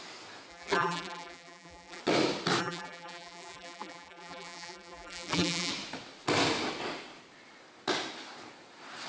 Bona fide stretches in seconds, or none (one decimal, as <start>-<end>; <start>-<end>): 0.0-0.5; 2.0-2.6; 5.7-9.1